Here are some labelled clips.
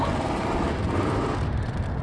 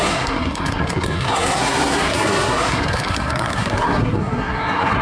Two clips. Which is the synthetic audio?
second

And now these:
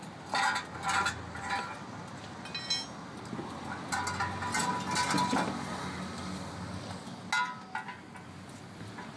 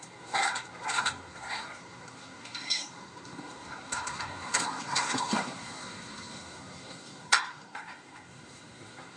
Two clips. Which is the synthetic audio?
second